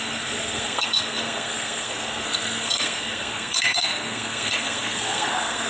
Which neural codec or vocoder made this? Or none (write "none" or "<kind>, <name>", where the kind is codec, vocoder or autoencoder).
codec, SNAC